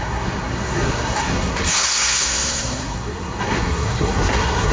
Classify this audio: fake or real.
fake